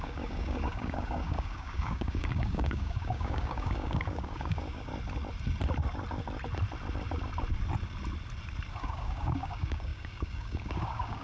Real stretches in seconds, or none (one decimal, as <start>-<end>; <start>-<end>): 4.9-8.7